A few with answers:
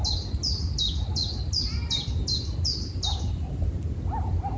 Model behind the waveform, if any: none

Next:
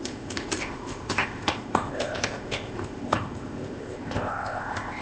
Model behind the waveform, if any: codec, ZipCodec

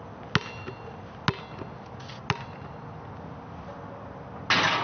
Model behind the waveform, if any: none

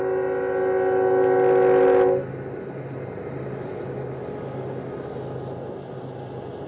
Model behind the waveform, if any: none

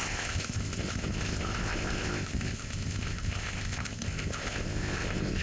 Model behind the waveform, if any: codec, ZipCodec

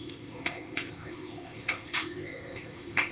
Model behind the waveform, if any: codec, ZipCodec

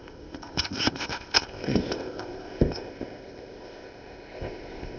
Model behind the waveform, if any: codec, ZipCodec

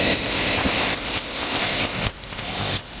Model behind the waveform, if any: codec, ZipCodec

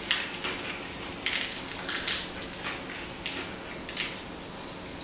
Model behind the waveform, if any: none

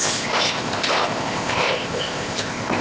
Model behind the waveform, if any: codec, ZipCodec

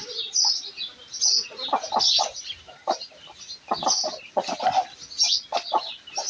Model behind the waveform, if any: none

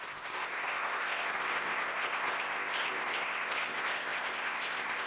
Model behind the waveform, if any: codec, ZipCodec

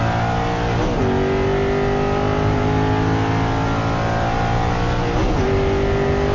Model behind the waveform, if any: none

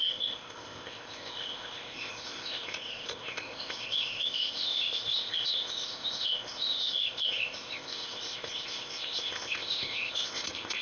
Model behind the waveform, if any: codec, ZipCodec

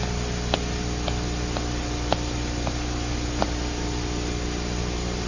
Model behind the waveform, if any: none